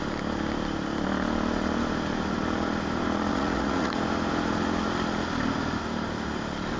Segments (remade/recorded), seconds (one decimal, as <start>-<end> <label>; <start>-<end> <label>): 0.0-3.3 recorded; 3.3-3.9 remade; 3.9-6.8 recorded